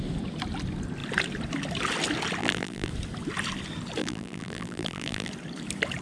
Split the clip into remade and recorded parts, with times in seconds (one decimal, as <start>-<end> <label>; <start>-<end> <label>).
0.0-2.4 recorded; 2.4-2.9 remade; 2.9-4.0 recorded; 4.0-5.3 remade; 5.3-6.0 recorded

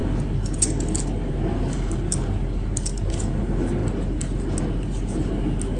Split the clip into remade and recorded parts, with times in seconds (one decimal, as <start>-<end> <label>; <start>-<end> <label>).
0.0-5.8 recorded

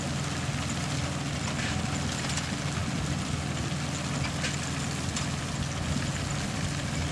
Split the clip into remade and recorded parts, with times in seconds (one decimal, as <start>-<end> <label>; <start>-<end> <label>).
0.0-7.1 recorded

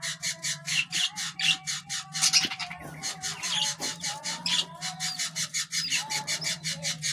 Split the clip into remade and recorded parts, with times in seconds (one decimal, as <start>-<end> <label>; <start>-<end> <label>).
0.0-2.6 remade; 2.6-3.8 recorded; 3.8-4.5 remade; 4.5-6.2 recorded; 6.2-7.1 remade